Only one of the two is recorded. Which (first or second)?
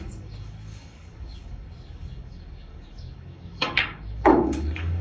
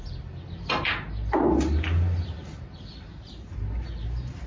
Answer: second